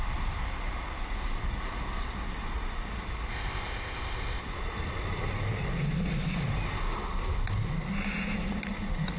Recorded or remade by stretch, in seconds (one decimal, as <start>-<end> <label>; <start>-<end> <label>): 0.0-3.3 recorded; 3.3-4.4 remade; 4.4-9.2 recorded